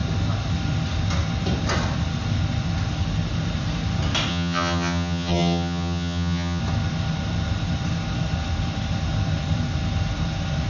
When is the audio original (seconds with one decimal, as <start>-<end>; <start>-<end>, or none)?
0.0-4.3; 6.6-10.7